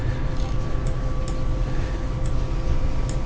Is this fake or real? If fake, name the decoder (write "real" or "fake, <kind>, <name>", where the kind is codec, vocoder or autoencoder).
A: real